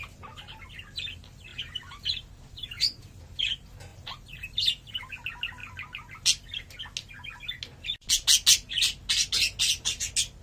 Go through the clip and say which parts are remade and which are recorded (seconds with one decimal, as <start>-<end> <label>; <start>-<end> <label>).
0.0-1.5 recorded; 1.5-3.2 remade; 3.2-3.9 recorded; 3.9-5.0 remade; 5.0-10.4 recorded